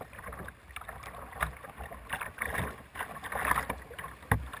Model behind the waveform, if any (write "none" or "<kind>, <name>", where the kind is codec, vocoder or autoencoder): none